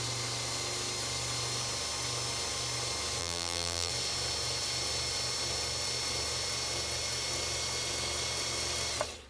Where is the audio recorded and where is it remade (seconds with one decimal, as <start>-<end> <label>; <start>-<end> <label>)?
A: 0.0-3.2 recorded; 3.2-3.9 remade; 3.9-9.3 recorded